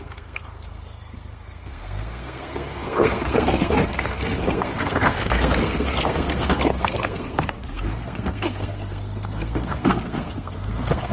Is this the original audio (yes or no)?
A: no